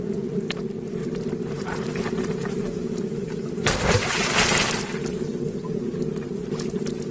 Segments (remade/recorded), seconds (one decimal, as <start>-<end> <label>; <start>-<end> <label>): 0.0-1.0 recorded; 1.0-4.8 remade; 4.8-7.1 recorded